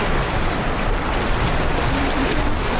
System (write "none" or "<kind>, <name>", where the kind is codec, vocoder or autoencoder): none